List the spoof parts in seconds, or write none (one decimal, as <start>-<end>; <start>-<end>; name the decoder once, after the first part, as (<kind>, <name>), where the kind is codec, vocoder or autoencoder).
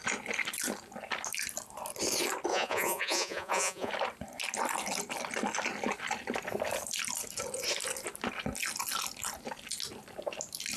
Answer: 2.5-3.9 (vocoder, Vocos)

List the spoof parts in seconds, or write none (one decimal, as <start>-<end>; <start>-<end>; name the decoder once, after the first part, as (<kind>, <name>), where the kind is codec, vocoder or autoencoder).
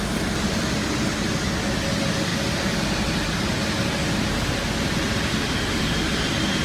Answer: none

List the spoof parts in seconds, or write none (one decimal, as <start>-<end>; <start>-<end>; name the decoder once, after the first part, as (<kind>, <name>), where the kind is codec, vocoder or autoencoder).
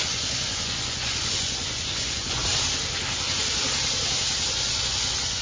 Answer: 0.0-2.4 (vocoder, Vocos); 4.5-5.4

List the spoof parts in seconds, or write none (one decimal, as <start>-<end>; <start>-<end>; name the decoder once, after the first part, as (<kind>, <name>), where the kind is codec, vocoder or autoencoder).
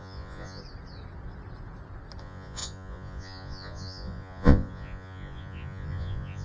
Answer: 0.0-0.6 (vocoder, Vocos); 2.2-6.4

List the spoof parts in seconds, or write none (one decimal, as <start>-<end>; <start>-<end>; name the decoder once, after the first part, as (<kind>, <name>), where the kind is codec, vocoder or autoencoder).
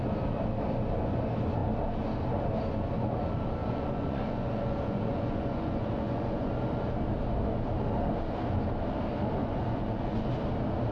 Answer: 3.6-6.5 (vocoder, Vocos); 9.4-10.3